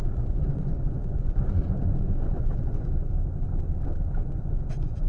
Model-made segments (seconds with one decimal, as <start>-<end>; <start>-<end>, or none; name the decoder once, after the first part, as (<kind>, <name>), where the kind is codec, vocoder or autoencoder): 0.0-3.1 (vocoder, Vocos); 4.2-5.1